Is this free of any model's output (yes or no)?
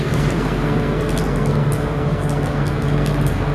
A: no